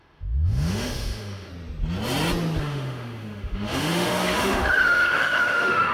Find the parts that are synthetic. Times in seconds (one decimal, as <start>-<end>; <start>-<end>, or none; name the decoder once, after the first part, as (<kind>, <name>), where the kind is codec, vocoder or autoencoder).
0.0-1.5 (autoencoder, DAC-VAE); 2.6-5.9